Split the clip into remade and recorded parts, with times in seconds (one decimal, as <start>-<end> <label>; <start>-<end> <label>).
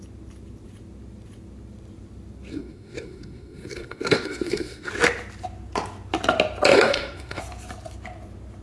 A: 0.0-2.5 recorded; 2.5-4.9 remade; 4.9-6.7 recorded; 6.7-7.4 remade; 7.4-8.6 recorded